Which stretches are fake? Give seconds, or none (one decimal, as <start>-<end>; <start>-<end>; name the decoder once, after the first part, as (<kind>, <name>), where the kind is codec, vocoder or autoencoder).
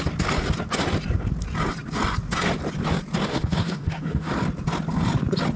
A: 3.3-4.3 (autoencoder, DAC-VAE)